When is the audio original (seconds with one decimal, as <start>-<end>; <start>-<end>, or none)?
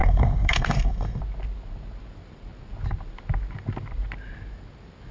1.2-5.1